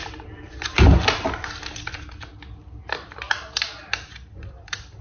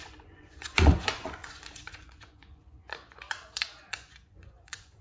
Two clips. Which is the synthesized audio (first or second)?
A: second